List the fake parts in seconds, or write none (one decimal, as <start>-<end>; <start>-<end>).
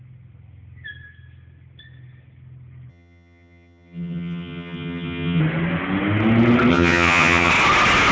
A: 2.9-5.4; 6.7-7.5